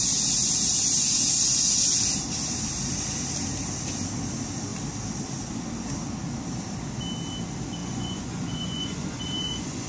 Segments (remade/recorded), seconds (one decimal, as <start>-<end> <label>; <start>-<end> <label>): 0.0-7.8 recorded; 7.8-9.9 remade

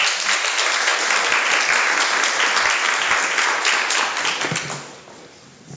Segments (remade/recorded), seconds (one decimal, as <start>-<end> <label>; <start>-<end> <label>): 0.0-5.8 recorded